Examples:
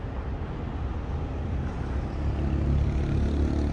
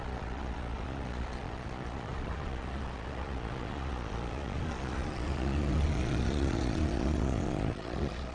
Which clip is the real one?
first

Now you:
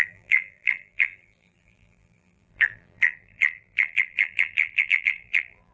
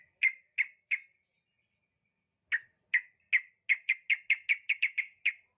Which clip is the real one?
second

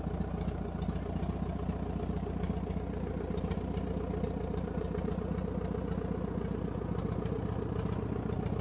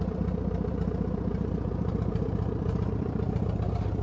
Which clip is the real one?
first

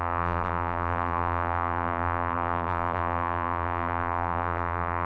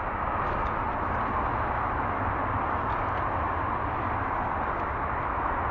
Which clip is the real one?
second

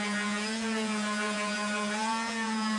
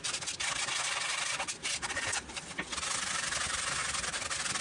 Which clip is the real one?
second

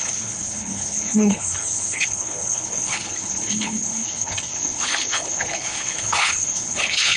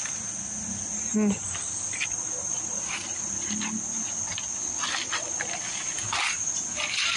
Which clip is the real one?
second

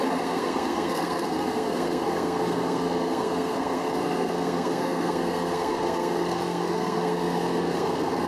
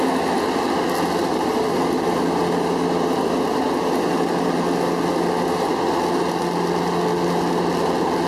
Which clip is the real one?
second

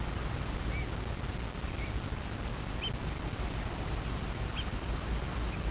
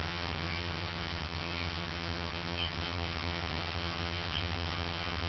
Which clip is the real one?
first